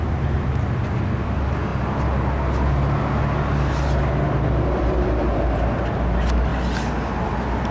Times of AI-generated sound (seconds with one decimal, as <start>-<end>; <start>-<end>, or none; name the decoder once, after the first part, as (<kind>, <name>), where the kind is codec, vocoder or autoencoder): none